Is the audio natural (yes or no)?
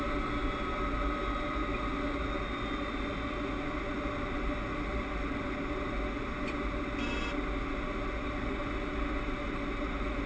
yes